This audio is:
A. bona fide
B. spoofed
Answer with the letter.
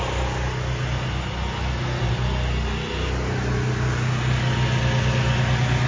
A